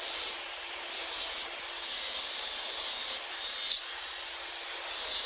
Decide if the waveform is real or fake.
real